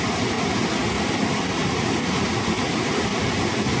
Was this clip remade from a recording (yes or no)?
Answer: no